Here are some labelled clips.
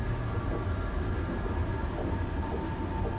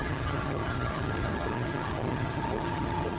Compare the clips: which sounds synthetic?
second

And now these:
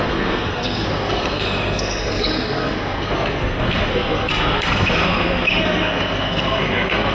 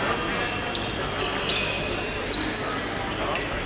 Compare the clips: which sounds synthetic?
first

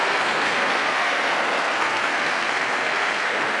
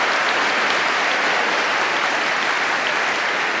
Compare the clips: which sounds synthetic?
first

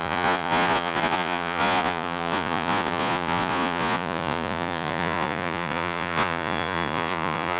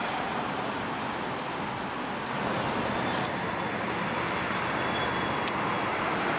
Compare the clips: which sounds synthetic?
first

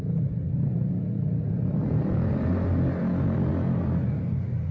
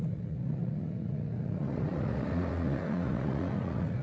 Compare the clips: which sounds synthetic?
second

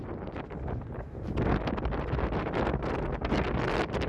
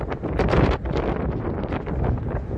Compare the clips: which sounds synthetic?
second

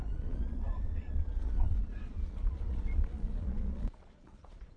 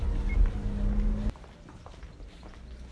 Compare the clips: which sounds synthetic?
first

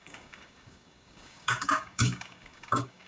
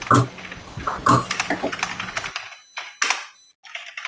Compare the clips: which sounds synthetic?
first